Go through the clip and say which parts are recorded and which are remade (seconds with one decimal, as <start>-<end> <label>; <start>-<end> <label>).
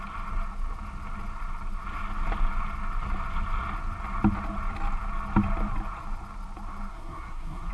0.0-6.9 recorded; 6.9-7.7 remade